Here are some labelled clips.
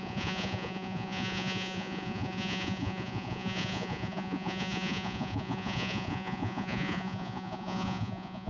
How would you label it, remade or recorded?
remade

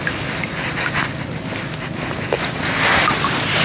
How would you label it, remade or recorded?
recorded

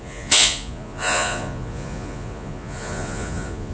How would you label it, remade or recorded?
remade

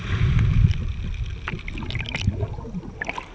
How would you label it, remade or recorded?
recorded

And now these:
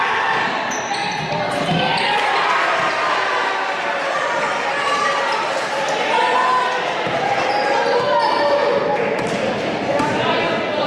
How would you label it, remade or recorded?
recorded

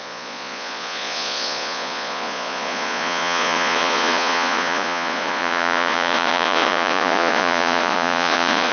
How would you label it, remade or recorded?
remade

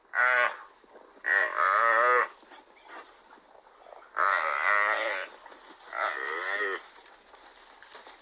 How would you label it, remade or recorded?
recorded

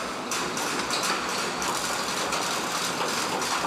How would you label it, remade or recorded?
recorded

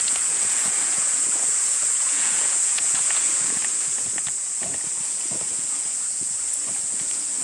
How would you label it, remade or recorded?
remade